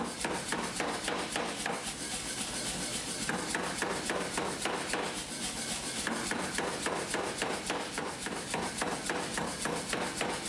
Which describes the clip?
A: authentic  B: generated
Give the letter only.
B